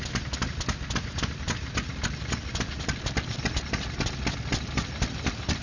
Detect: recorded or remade recorded